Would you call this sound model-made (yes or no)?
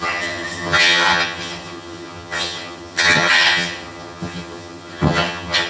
yes